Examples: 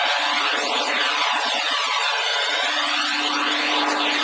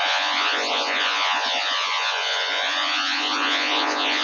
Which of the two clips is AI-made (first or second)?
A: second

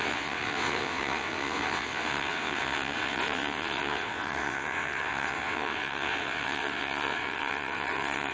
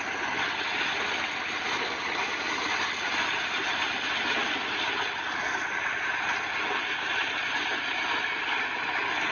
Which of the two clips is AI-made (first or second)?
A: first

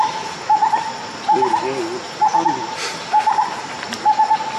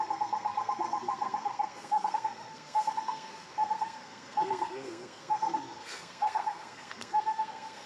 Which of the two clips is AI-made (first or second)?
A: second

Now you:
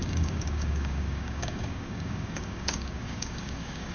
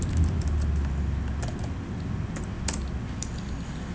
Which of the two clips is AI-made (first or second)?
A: first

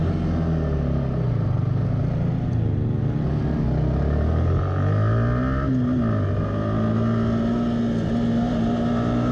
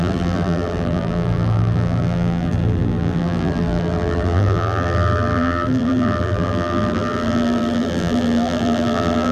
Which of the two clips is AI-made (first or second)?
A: second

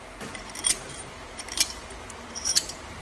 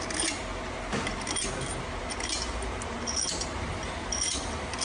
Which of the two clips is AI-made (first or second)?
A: first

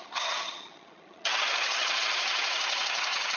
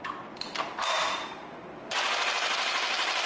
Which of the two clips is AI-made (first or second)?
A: first